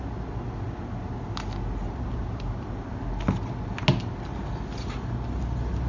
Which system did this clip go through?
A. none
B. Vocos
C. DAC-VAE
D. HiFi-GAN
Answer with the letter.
A